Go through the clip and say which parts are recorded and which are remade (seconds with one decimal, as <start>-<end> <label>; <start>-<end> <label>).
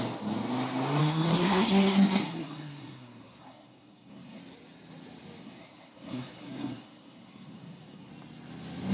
0.0-1.0 recorded; 1.0-4.4 remade; 4.4-5.4 recorded; 5.4-8.1 remade; 8.1-8.9 recorded